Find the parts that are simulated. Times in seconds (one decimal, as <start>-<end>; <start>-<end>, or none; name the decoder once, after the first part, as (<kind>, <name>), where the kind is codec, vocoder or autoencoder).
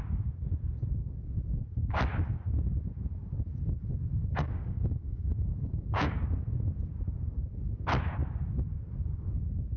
4.2-6.2 (codec, DAC)